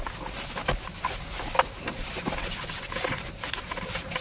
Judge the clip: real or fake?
real